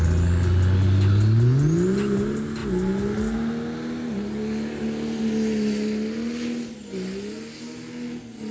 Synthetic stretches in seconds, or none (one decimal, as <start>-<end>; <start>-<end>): none